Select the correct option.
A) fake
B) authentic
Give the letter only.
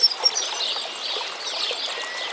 B